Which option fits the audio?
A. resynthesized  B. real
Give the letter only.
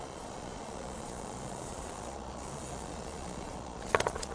A